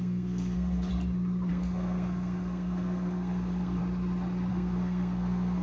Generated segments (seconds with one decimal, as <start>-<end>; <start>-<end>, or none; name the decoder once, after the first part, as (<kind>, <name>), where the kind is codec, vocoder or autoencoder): 0.0-0.9 (codec, SNAC); 1.5-3.8; 4.5-5.6